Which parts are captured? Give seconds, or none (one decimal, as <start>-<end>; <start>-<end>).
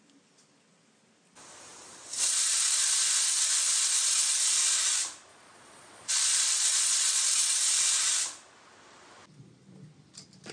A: 0.0-5.3; 7.2-10.5